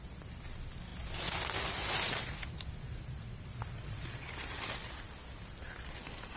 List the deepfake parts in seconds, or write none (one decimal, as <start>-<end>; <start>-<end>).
0.9-4.7; 5.2-6.0